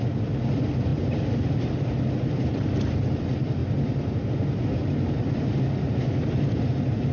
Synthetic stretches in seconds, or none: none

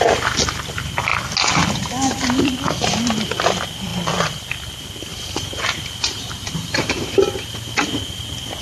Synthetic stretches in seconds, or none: 5.1-7.7 (vocoder, BigVGAN v2)

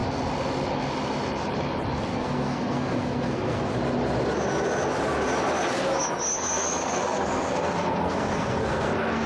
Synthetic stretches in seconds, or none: 2.1-3.7 (codec, SNAC); 6.8-9.3

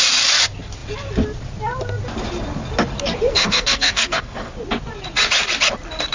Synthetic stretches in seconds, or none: 3.3-4.5 (codec, SNAC)